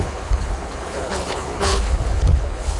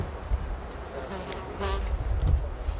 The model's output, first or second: first